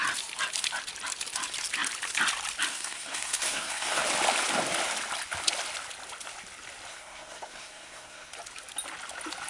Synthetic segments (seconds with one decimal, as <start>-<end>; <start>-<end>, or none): 2.7-4.0; 6.9-8.3